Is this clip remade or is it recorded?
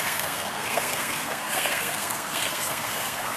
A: remade